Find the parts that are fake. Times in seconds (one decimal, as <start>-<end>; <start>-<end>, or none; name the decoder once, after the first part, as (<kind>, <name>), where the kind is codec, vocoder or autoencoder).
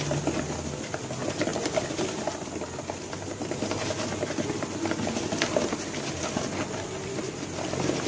none